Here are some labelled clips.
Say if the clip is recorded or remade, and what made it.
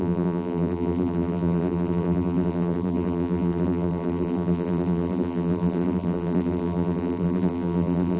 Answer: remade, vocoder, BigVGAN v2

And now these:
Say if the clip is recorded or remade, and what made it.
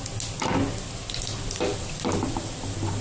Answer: recorded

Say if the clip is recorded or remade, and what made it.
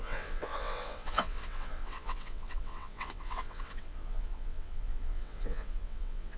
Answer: remade, vocoder, WaveNeXt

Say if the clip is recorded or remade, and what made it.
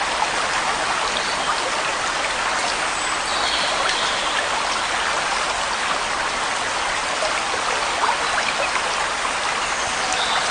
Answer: recorded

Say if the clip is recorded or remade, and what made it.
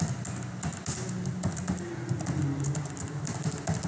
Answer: recorded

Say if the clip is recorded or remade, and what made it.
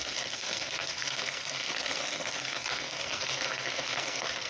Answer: remade, codec, SNAC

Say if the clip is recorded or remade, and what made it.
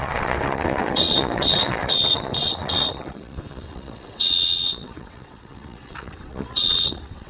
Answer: remade, vocoder, WaveNeXt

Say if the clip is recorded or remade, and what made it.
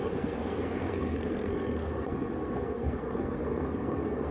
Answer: remade, codec, SNAC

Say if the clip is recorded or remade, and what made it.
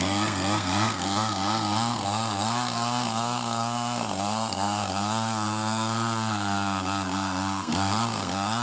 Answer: remade, codec, SNAC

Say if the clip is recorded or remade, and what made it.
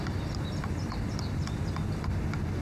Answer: recorded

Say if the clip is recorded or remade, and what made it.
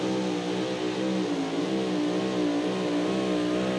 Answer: recorded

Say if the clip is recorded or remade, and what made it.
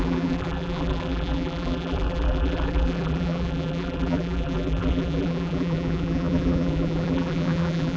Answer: remade, vocoder, BigVGAN v2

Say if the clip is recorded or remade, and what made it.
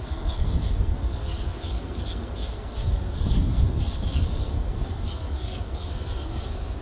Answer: remade, codec, SNAC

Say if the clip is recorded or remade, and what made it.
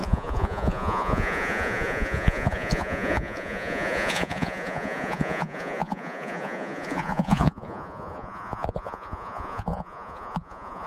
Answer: remade, vocoder, Vocos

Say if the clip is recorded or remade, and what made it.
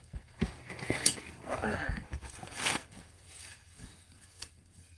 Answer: remade, codec, SNAC